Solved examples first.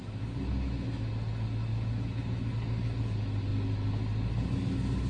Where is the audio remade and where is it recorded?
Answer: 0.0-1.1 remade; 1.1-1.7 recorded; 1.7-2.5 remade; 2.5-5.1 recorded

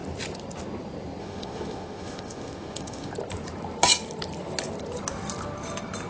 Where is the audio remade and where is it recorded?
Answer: 0.0-1.2 recorded; 1.2-3.1 remade; 3.1-6.1 recorded

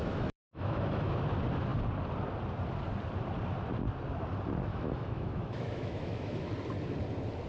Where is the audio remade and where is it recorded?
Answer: 0.0-1.2 remade; 1.2-4.7 recorded; 4.7-6.5 remade; 6.5-7.5 recorded

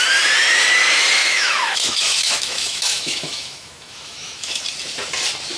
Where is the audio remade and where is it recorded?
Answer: 0.0-1.2 recorded; 1.2-4.6 remade; 4.6-5.6 recorded

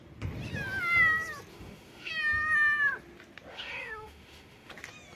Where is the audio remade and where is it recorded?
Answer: 0.0-1.5 recorded; 1.5-2.1 remade; 2.1-3.5 recorded; 3.5-4.7 remade; 4.7-5.2 recorded

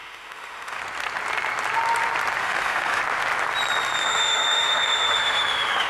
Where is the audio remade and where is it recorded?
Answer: 0.0-0.8 remade; 0.8-2.4 recorded; 2.4-3.0 remade; 3.0-4.0 recorded; 4.0-5.9 remade

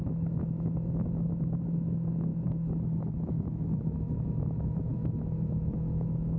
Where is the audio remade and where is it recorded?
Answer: 0.0-2.3 remade; 2.3-3.1 recorded; 3.1-6.4 remade